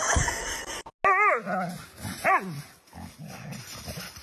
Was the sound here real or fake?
real